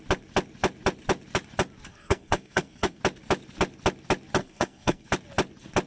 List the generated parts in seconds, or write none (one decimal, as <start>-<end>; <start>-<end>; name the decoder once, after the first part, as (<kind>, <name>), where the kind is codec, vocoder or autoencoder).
1.9-3.0 (codec, SNAC); 4.4-5.1